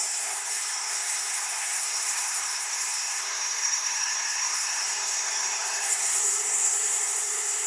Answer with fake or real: fake